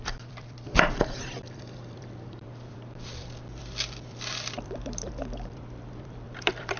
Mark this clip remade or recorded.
remade